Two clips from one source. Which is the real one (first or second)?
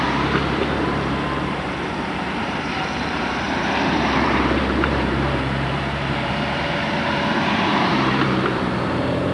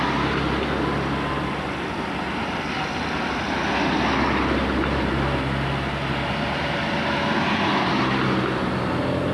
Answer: second